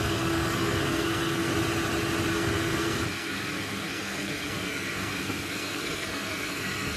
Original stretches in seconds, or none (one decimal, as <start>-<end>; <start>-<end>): 1.5-2.3